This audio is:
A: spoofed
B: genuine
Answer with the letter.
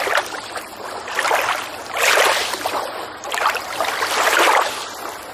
B